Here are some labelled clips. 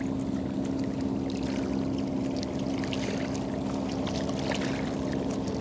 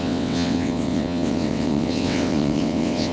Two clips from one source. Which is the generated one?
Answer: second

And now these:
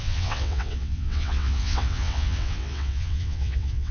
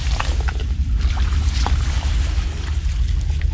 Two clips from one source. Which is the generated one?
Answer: first